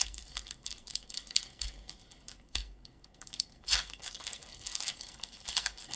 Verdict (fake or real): fake